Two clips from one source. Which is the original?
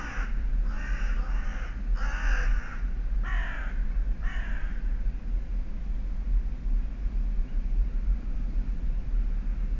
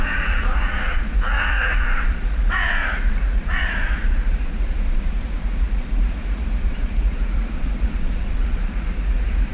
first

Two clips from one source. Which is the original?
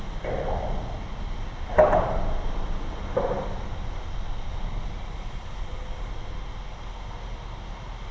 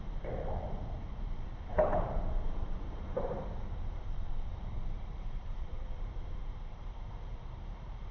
first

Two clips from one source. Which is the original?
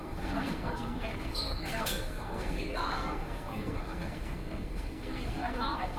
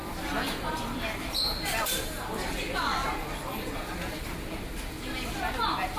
second